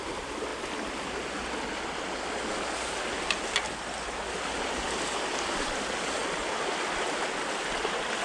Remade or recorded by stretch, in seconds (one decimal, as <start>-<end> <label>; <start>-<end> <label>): 0.0-8.2 recorded